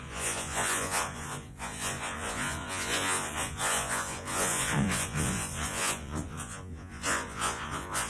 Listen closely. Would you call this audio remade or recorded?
remade